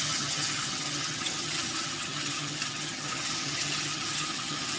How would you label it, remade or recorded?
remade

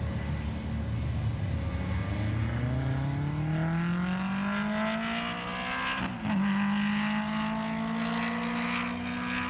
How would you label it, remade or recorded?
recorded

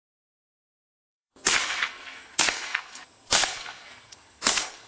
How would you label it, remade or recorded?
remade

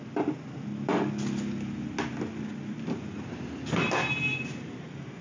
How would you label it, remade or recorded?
recorded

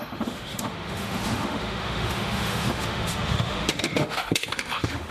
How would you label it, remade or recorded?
remade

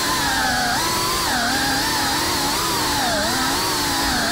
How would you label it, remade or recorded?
recorded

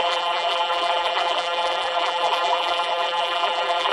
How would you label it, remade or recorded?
remade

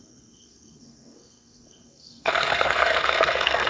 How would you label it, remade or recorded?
remade